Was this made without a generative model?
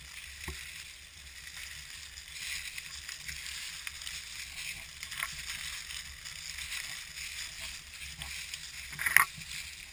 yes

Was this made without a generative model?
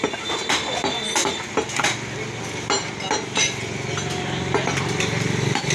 yes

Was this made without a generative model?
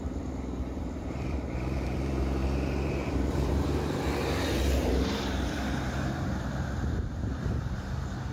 no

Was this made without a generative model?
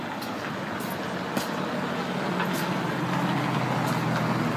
yes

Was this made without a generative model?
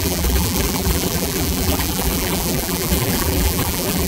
no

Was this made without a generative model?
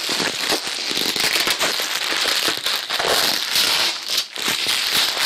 yes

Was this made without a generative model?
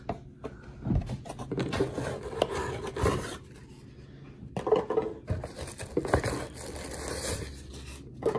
yes